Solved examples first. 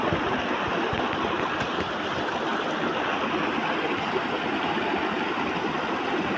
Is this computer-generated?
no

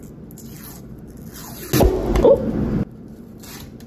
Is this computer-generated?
no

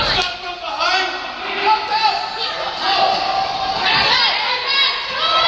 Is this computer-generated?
no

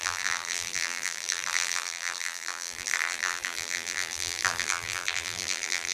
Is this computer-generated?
yes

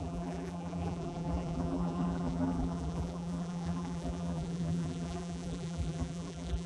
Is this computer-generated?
yes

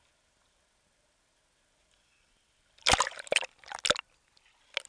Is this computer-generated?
no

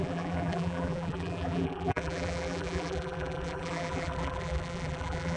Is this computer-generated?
yes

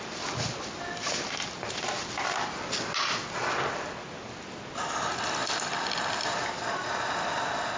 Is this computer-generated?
no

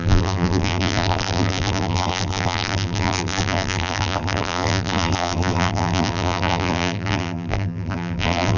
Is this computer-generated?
yes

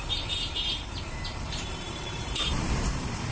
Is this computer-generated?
yes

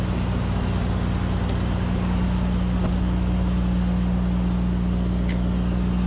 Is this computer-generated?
no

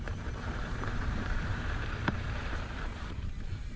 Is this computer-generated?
yes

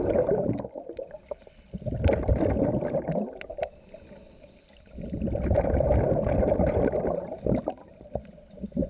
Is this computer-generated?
yes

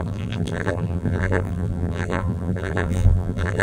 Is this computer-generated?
yes